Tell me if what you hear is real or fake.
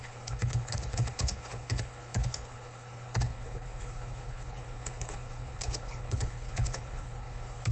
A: fake